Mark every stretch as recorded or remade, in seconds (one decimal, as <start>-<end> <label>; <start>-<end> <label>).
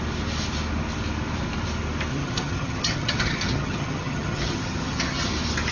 0.0-2.1 recorded; 2.1-5.3 remade; 5.3-5.7 recorded